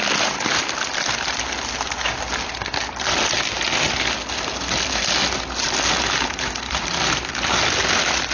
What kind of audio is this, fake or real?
real